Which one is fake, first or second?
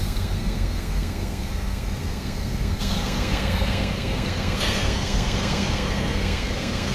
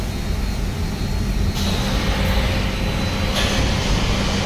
first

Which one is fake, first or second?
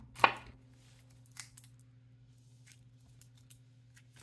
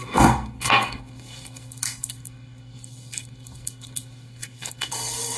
second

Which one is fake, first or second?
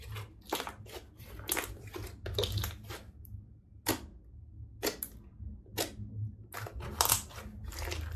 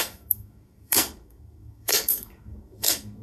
second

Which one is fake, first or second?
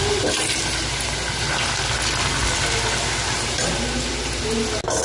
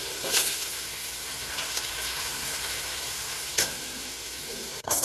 second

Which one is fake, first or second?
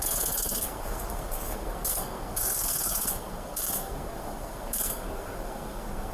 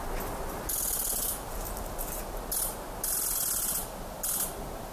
first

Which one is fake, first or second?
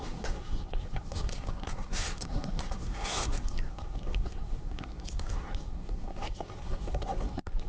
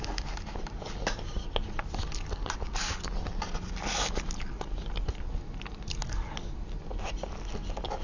first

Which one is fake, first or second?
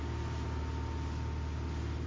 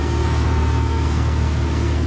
second